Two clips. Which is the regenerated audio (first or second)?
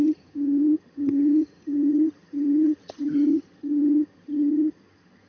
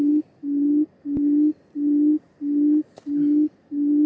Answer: first